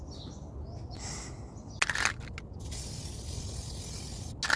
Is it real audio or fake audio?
real